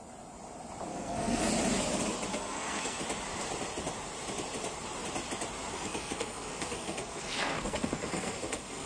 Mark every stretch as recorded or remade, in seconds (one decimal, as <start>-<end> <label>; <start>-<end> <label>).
0.0-0.9 recorded; 0.9-1.5 remade; 1.5-2.3 recorded; 2.3-3.0 remade; 3.0-5.7 recorded; 5.7-8.9 remade